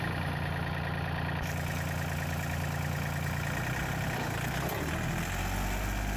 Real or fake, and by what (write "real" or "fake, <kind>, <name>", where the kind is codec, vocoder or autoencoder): real